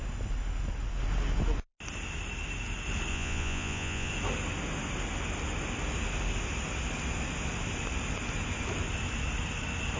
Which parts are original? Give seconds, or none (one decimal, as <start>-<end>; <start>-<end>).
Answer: 0.0-3.1; 4.1-10.0